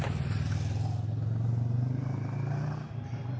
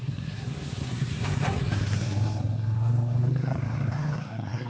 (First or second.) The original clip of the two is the first